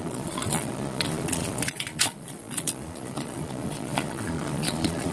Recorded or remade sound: remade